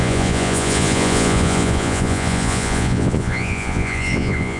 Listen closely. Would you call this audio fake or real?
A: fake